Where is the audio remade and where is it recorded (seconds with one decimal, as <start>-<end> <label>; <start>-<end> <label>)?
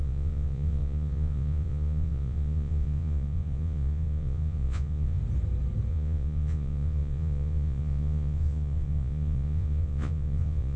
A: 0.0-5.2 remade; 5.2-5.9 recorded; 5.9-10.8 remade